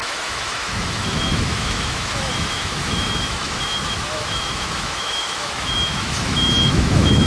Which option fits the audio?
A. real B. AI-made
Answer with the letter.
B